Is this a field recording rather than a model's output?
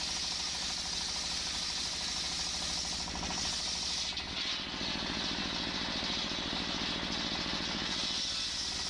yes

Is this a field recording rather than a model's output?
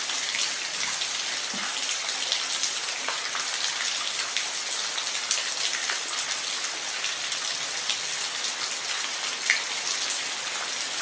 yes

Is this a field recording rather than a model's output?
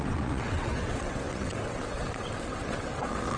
no